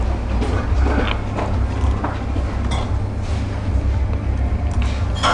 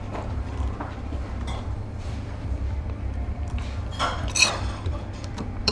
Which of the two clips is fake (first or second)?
second